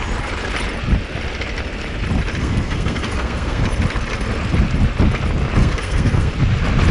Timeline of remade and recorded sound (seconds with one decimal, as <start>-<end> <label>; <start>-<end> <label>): 0.0-2.4 recorded; 2.4-3.6 remade; 3.6-5.6 recorded; 5.6-6.3 remade; 6.3-6.9 recorded